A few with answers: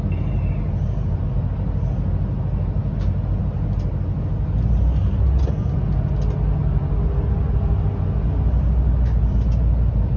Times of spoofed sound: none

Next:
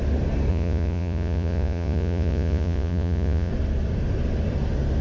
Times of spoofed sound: 0.5-3.5

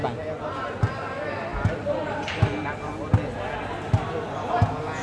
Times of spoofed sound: none

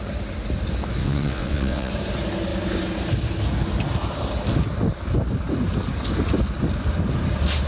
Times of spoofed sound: 1.0-1.9

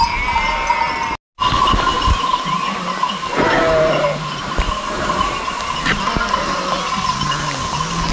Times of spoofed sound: 1.9-5.8

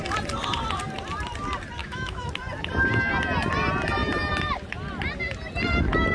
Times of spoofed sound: 1.8-2.3

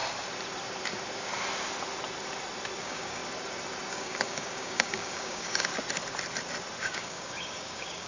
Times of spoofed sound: 2.8-3.2; 3.9-5.7; 6.8-8.1

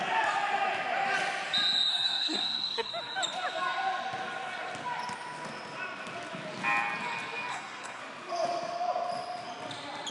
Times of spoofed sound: 1.9-2.9; 7.5-8.0